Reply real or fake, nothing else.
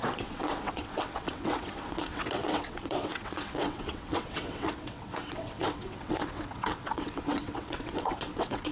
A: fake